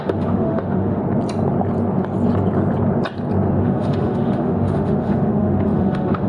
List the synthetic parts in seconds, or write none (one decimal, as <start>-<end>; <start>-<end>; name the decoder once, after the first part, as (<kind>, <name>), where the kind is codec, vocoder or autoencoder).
0.0-1.0 (autoencoder, DAC-VAE); 3.6-6.3